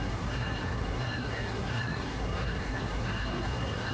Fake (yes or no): yes